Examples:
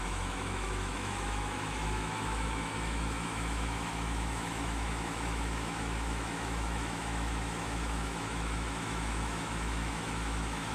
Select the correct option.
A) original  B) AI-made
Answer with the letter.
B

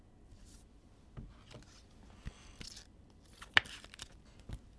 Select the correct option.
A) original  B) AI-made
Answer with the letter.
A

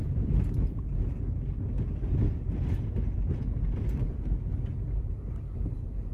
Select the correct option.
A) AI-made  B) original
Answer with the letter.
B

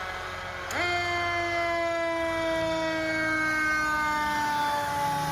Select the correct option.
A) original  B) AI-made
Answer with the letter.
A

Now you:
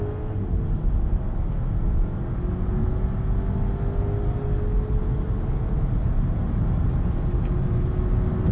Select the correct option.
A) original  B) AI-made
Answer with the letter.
A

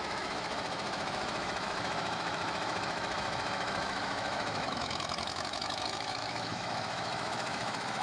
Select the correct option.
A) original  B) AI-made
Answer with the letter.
B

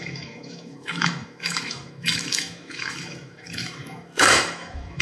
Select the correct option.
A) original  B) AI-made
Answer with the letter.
B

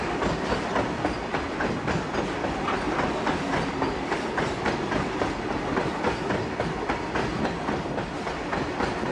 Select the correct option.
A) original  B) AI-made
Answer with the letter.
A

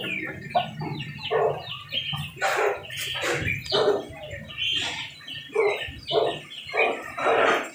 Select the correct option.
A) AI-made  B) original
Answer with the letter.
B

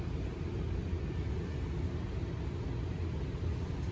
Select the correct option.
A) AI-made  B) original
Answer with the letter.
B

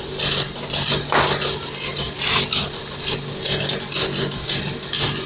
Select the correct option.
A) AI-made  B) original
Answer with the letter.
B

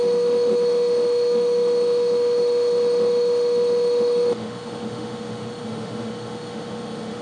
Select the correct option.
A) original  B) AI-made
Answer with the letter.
B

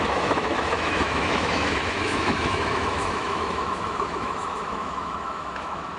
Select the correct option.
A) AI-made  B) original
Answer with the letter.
A